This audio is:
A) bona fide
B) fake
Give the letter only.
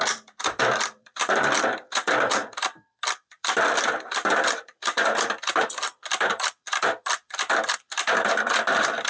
B